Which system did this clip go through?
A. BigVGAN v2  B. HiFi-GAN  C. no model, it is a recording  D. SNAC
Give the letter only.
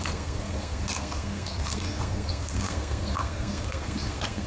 D